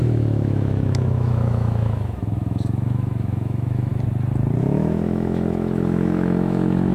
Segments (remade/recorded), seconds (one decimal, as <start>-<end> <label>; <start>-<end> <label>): 0.0-3.9 remade; 3.9-4.6 recorded; 4.6-6.9 remade